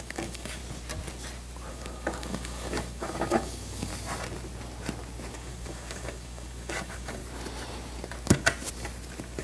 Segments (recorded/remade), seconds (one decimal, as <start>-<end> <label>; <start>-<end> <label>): 0.0-0.6 remade; 0.6-1.7 recorded; 1.7-3.9 remade; 3.9-5.3 recorded; 5.3-7.2 remade; 7.2-9.4 recorded